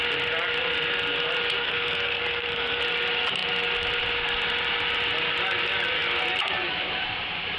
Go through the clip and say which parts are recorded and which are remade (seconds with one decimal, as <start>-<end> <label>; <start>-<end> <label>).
0.0-1.6 recorded; 1.6-2.8 remade; 2.8-7.6 recorded